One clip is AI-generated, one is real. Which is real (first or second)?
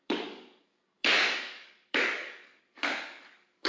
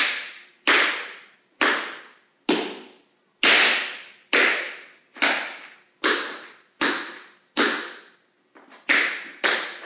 second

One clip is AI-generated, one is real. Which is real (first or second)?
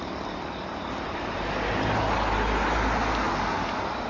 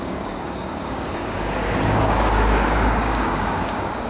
first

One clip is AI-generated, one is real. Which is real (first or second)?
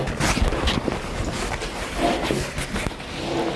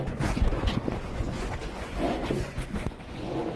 first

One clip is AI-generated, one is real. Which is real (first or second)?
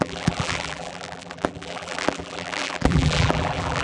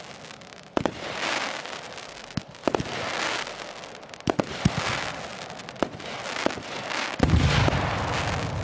second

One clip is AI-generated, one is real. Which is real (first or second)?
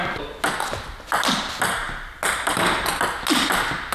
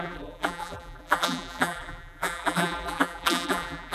first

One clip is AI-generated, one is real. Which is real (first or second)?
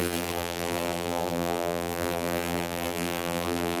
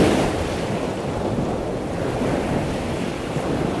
second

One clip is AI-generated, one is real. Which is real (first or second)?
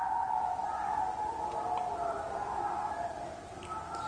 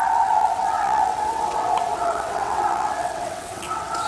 first